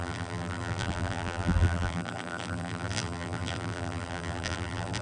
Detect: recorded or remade remade